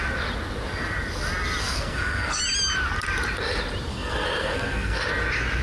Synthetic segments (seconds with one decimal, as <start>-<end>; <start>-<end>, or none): 1.6-2.4; 3.9-5.0